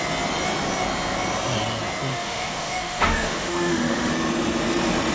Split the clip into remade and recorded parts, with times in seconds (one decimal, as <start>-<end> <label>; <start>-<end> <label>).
0.0-2.1 recorded; 2.1-4.1 remade; 4.1-5.1 recorded